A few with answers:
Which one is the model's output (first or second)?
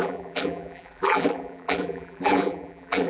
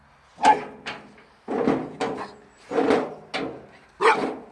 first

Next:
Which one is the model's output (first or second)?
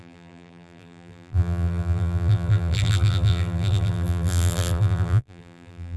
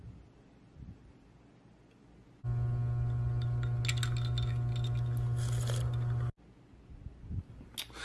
first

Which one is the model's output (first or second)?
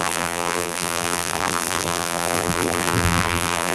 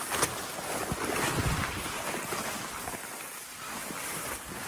first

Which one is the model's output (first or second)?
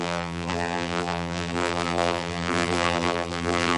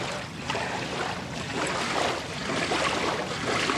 first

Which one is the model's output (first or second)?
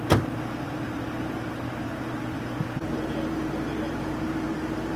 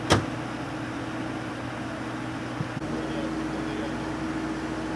first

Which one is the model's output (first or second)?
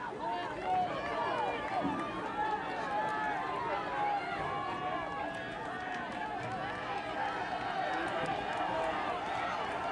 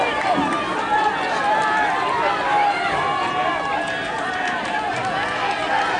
second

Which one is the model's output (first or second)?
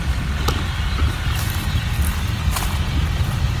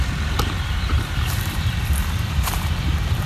second